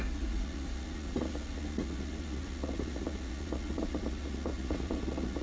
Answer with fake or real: fake